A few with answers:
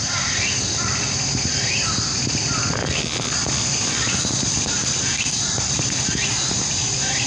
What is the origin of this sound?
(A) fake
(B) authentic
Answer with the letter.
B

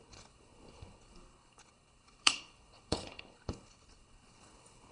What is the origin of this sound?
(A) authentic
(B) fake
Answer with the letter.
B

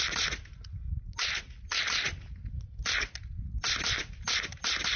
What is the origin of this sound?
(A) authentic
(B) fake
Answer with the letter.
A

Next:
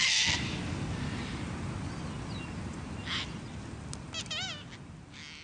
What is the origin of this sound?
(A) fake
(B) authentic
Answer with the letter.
B